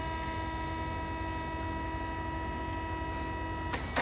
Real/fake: real